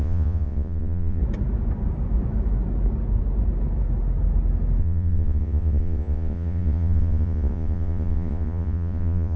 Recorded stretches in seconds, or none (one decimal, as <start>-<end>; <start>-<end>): 1.2-4.8